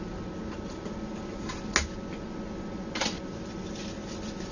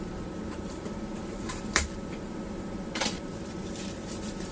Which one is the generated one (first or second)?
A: second